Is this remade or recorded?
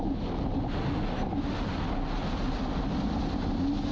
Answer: recorded